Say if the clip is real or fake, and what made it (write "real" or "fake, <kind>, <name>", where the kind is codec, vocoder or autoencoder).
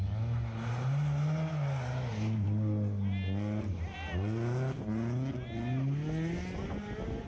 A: real